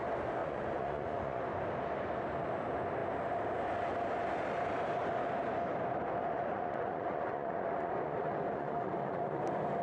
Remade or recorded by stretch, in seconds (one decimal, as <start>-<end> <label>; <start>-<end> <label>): 0.0-0.4 recorded; 0.4-1.4 remade; 1.4-6.2 recorded; 6.2-9.4 remade; 9.4-9.8 recorded